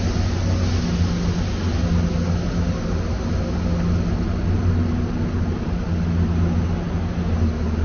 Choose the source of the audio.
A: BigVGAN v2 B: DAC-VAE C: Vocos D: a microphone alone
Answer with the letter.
D